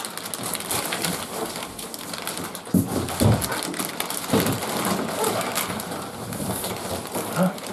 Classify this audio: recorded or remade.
recorded